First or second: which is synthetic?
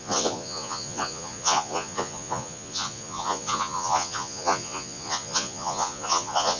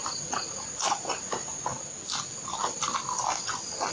first